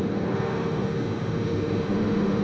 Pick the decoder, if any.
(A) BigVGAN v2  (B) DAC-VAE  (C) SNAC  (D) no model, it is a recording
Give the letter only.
B